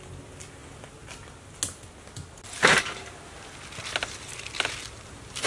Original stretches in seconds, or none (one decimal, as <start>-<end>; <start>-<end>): 0.0-5.5